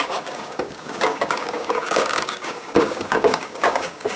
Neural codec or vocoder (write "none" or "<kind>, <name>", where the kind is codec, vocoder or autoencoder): codec, DAC